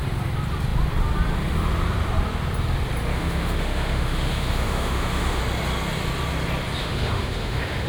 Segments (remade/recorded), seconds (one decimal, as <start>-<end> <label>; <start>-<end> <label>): 0.0-3.1 recorded; 3.1-5.4 remade; 5.4-6.8 recorded; 6.8-7.9 remade